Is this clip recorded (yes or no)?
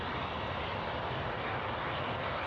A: yes